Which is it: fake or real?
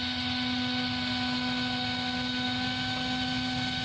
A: real